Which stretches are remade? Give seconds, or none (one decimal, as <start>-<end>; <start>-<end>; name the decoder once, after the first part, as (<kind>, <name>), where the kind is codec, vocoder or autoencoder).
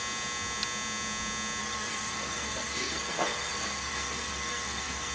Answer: 1.6-5.1 (codec, SNAC)